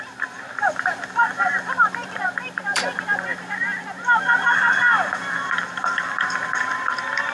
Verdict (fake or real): fake